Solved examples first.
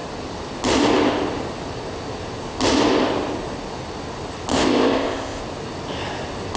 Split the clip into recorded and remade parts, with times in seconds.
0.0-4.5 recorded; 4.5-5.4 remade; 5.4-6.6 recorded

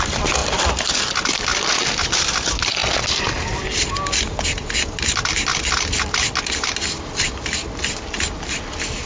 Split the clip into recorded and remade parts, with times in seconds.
0.0-9.1 recorded